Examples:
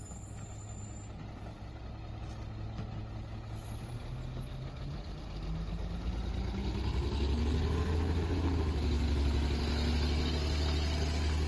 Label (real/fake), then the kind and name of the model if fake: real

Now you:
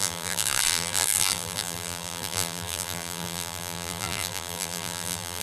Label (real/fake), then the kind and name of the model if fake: fake, vocoder, BigVGAN v2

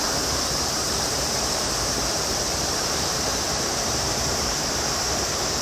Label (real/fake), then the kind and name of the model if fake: fake, vocoder, BigVGAN v2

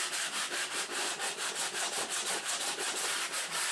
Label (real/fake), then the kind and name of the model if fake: fake, vocoder, BigVGAN v2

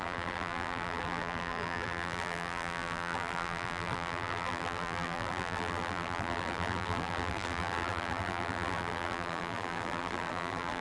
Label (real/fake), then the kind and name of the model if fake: fake, vocoder, BigVGAN v2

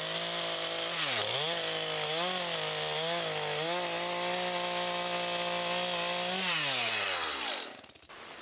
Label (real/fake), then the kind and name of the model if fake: real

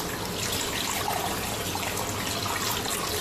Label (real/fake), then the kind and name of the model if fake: real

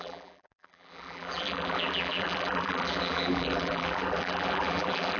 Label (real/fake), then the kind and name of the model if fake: fake, vocoder, BigVGAN v2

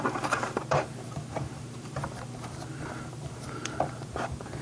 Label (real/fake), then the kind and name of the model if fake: fake, vocoder, BigVGAN v2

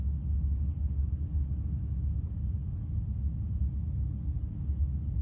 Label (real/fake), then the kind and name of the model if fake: real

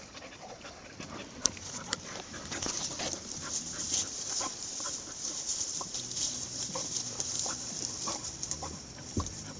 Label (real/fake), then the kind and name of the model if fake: fake, vocoder, BigVGAN v2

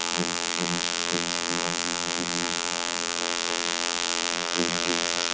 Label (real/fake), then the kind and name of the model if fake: fake, vocoder, BigVGAN v2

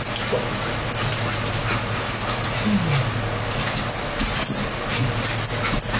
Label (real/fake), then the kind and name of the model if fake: real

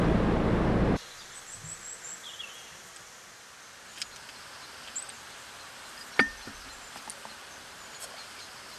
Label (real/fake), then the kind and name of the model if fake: real